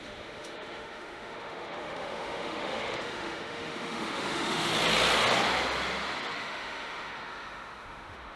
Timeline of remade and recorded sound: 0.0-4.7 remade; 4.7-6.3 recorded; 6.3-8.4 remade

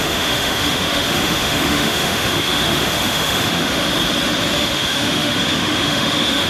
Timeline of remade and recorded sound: 0.0-3.9 remade; 3.9-4.6 recorded; 4.6-6.5 remade

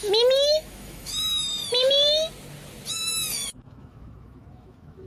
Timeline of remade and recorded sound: 0.0-1.5 remade; 1.5-2.9 recorded; 2.9-5.1 remade

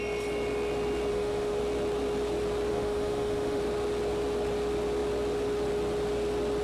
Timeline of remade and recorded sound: 0.0-1.1 recorded; 1.1-1.6 remade; 1.6-2.7 recorded; 2.7-3.6 remade; 3.6-6.6 recorded